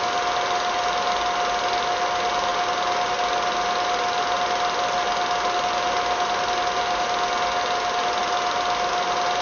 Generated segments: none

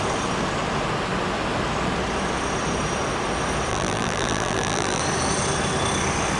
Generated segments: 3.7-5.0 (vocoder, BigVGAN v2)